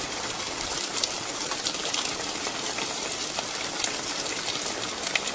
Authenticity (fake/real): real